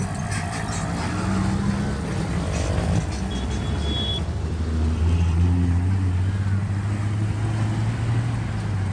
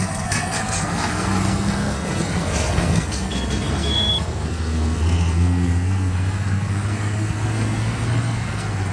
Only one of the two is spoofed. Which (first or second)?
second